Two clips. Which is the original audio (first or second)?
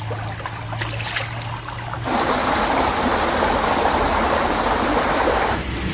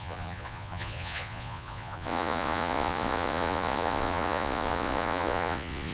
first